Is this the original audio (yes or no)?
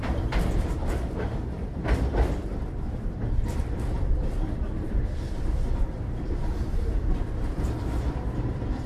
no